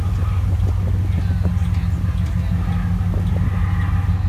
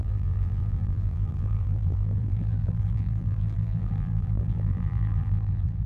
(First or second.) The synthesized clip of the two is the second